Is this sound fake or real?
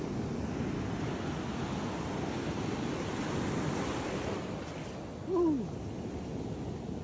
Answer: real